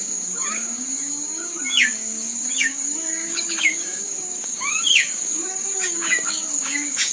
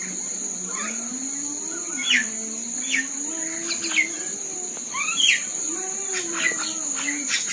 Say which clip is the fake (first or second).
first